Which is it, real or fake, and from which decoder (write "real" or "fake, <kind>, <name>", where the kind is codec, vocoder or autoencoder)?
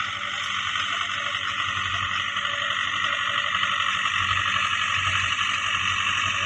real